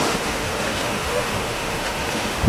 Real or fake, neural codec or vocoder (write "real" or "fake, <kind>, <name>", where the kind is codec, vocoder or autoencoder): fake, autoencoder, DAC-VAE